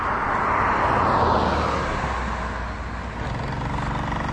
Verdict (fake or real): real